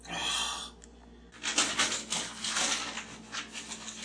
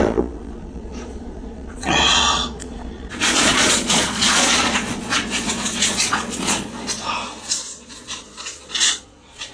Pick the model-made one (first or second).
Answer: second